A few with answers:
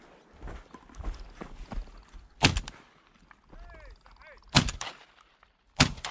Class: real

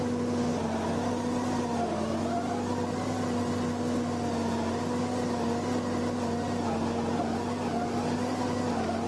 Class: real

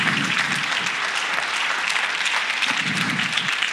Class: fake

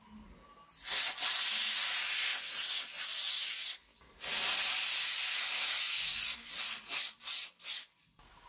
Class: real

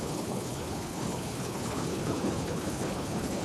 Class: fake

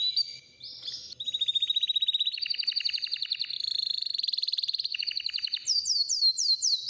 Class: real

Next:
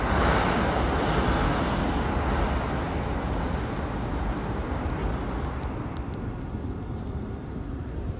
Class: real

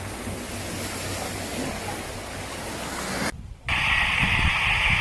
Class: real